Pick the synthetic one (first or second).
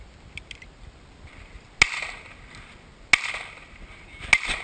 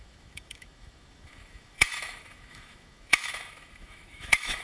second